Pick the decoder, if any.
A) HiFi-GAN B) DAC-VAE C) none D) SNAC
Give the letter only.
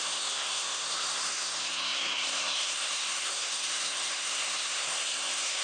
D